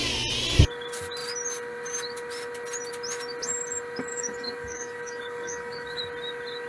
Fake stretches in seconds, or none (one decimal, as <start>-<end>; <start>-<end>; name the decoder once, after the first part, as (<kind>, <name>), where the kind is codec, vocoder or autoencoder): 4.1-6.0 (codec, DAC)

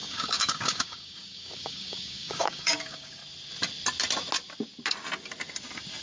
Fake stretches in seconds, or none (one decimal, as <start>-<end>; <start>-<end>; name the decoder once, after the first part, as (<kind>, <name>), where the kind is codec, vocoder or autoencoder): 0.0-3.2 (codec, DAC)

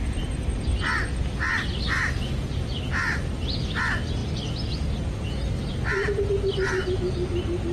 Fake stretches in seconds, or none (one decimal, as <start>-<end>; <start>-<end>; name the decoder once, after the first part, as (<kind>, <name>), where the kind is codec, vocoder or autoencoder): none

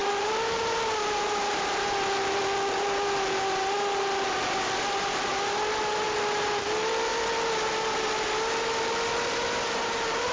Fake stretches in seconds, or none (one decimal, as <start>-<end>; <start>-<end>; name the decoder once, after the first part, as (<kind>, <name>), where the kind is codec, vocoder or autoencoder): none